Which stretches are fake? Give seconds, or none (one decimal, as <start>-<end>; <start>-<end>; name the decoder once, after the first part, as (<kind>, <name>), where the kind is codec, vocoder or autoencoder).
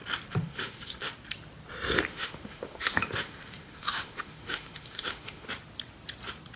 0.4-1.1 (autoencoder, DAC-VAE); 2.1-5.5